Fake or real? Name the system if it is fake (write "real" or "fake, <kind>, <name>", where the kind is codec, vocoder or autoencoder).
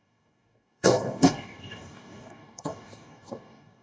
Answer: fake, codec, DAC